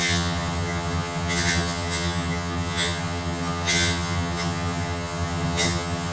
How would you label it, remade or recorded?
remade